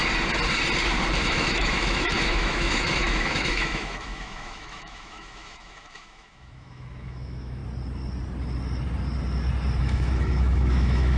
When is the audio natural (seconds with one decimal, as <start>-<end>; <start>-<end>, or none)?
0.0-1.2; 7.6-9.8